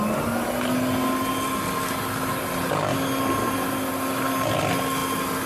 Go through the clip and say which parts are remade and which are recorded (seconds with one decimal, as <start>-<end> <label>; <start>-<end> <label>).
0.0-5.5 recorded